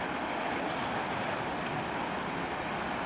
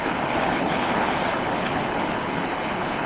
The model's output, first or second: second